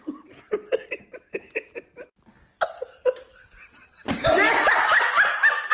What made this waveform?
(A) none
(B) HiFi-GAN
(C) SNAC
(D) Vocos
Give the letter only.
A